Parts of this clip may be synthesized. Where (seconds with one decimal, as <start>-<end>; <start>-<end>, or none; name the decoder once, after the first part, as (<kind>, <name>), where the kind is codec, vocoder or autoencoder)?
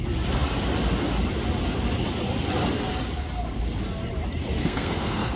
4.6-5.4 (codec, SNAC)